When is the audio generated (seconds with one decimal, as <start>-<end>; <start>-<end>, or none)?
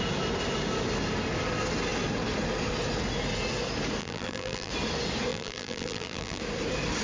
4.0-4.7; 5.3-6.4